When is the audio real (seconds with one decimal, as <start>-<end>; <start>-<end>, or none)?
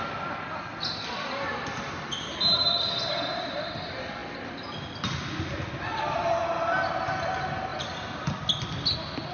0.0-9.3